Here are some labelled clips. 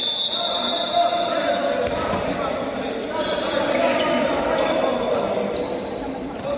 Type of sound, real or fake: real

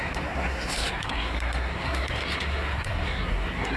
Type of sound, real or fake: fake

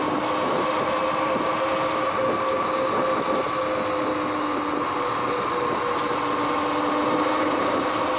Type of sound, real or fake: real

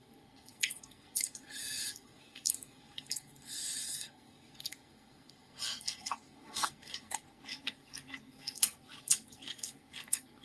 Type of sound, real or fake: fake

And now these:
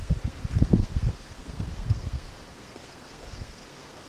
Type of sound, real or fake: fake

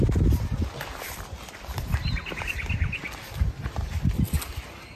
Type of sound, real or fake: real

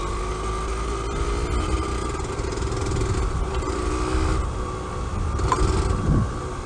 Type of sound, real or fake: real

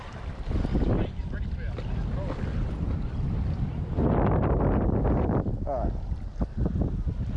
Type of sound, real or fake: real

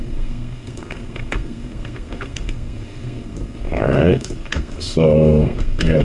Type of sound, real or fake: fake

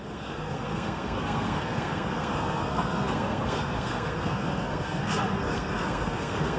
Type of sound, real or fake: fake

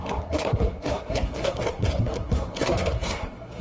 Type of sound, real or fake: fake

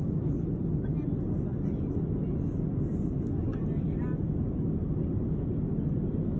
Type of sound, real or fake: real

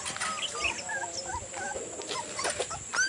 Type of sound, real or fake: real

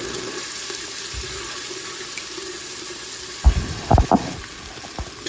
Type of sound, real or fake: real